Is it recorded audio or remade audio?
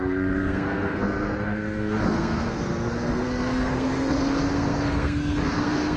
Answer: remade